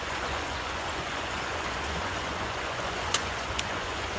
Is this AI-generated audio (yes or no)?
yes